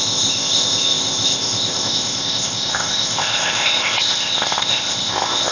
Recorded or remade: remade